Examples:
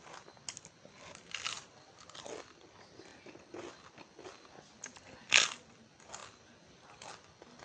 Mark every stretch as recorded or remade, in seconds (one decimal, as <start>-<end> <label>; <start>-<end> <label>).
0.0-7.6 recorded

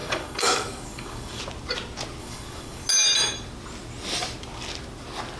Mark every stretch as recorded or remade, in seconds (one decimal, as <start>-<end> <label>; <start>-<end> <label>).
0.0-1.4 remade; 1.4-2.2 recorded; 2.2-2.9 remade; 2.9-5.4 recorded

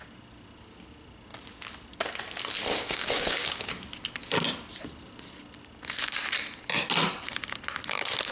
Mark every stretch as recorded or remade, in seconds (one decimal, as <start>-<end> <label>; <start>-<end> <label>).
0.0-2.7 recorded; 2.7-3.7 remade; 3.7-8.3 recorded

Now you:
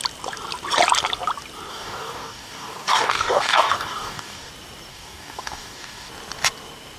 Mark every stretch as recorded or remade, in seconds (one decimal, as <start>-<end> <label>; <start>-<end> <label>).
0.0-1.7 recorded; 1.7-4.5 remade; 4.5-4.9 recorded; 4.9-6.1 remade; 6.1-7.0 recorded